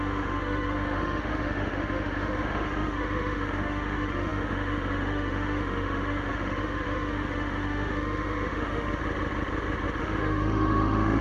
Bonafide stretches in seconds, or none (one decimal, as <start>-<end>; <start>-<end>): 9.0-10.0